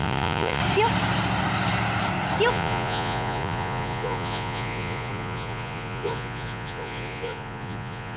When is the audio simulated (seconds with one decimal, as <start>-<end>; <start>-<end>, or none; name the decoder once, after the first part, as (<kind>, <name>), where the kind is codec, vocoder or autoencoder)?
0.0-0.6 (vocoder, Vocos); 2.5-8.2